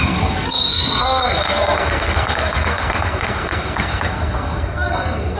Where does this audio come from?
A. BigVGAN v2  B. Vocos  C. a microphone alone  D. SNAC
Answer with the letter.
D